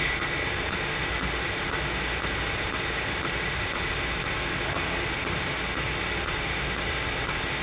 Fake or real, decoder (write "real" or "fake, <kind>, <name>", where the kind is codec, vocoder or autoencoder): real